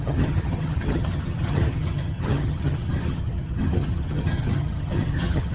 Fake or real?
fake